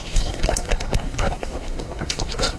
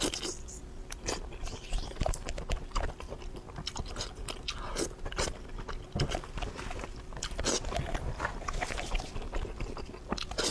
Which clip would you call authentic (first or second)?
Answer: second